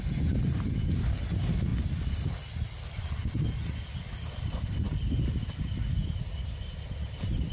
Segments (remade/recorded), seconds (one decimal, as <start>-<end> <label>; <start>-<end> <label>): 0.0-7.5 recorded